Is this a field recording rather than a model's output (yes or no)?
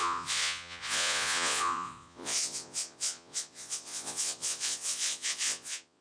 no